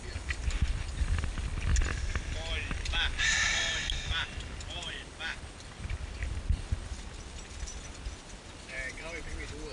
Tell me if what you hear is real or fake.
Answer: real